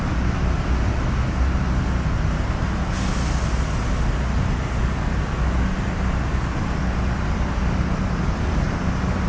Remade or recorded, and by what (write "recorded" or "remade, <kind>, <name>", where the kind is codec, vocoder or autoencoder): recorded